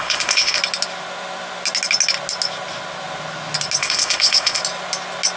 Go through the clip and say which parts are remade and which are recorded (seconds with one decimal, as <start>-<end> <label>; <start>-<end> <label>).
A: 0.0-0.6 remade; 0.6-3.8 recorded; 3.8-4.6 remade; 4.6-5.4 recorded